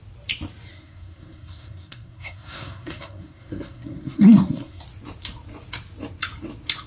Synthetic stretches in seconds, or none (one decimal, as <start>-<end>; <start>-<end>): 0.7-4.8